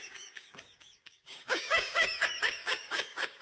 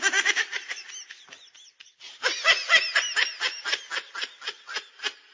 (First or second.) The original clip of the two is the second